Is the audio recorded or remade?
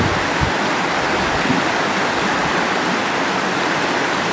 recorded